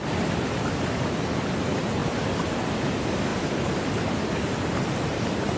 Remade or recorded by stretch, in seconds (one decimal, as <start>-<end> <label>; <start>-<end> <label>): 0.0-5.6 recorded